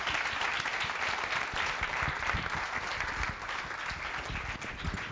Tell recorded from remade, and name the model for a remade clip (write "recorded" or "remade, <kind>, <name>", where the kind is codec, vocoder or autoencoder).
recorded